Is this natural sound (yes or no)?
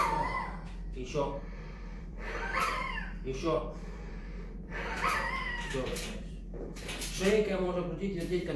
no